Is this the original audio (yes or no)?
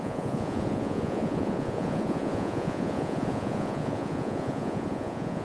no